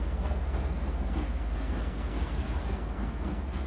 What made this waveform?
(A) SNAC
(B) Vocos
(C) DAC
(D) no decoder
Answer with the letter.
A